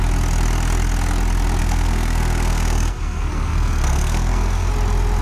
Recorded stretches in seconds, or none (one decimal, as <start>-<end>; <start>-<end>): 0.0-1.6; 4.7-5.2